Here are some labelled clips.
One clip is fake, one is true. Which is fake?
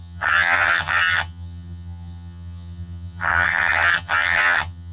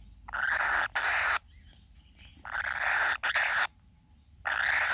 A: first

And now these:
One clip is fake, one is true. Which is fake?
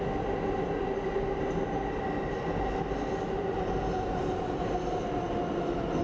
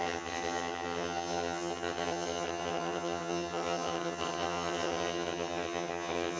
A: second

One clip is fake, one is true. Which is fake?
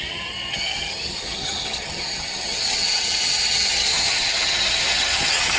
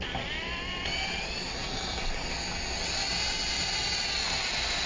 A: first